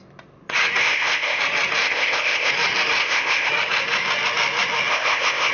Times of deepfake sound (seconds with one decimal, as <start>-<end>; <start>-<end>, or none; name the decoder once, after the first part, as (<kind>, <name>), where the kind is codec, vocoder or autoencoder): 0.8-1.4 (codec, ZipCodec); 1.8-2.5; 3.0-3.5; 4.9-5.5